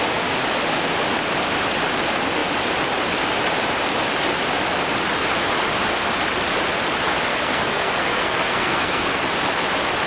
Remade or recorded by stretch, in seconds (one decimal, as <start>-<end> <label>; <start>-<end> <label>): 0.0-7.3 recorded; 7.3-9.2 remade; 9.2-10.1 recorded